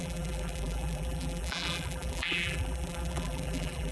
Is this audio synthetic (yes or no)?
yes